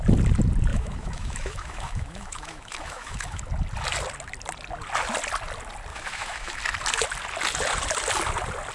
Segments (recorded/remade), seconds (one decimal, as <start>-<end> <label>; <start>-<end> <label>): 0.0-0.7 recorded; 0.7-3.4 remade; 3.4-5.9 recorded; 5.9-6.6 remade; 6.6-8.7 recorded